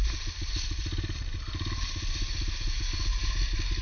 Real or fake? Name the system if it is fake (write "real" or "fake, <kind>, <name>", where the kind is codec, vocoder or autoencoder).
real